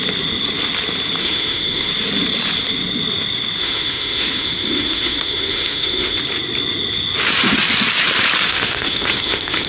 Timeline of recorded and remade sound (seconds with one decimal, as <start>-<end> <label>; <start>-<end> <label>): 0.0-1.2 recorded; 1.2-1.9 remade; 1.9-3.6 recorded; 3.6-6.2 remade; 6.2-8.5 recorded; 8.5-9.7 remade